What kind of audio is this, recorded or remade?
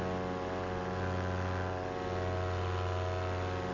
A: recorded